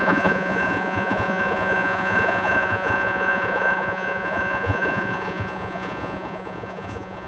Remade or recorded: remade